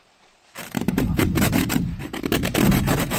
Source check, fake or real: fake